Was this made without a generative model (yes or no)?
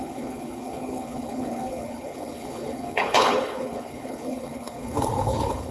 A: no